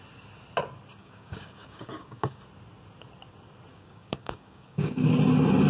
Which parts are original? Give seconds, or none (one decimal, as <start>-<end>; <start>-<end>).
0.0-1.0; 2.4-3.7; 5.1-5.7